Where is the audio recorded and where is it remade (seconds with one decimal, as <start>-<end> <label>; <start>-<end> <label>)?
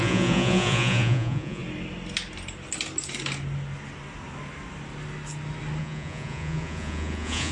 0.0-1.6 remade; 1.6-5.8 recorded; 5.8-7.5 remade